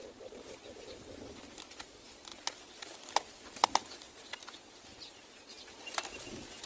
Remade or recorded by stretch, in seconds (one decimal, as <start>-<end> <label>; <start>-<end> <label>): 0.0-6.7 recorded